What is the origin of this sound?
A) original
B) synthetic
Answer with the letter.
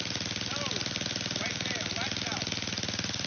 A